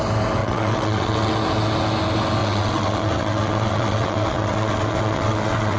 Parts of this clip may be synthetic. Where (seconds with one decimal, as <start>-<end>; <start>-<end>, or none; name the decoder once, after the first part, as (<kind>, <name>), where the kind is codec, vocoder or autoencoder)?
0.4-1.3 (vocoder, WaveNeXt); 2.4-5.8